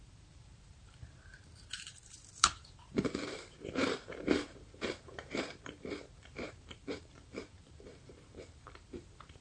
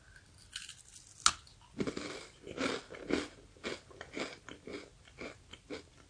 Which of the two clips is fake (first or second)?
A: first